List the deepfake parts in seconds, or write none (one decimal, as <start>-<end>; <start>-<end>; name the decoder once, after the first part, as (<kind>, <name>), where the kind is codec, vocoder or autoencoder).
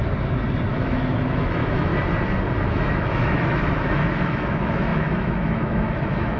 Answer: 0.7-1.9 (autoencoder, DAC-VAE); 2.6-6.4